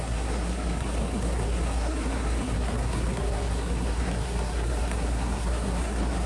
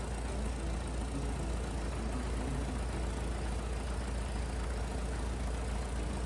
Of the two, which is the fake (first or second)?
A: first